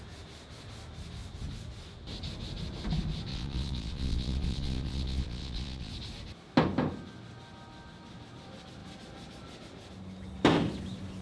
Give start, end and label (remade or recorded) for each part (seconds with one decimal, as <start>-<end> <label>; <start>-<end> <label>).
0.0-3.3 recorded; 3.3-5.9 remade; 5.9-11.2 recorded